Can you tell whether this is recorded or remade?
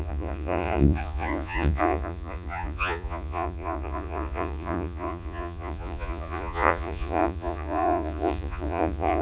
remade